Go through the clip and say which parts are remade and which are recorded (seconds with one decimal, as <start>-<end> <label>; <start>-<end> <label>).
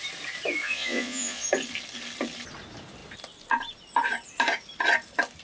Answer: 0.0-0.6 recorded; 0.6-1.5 remade; 1.5-5.4 recorded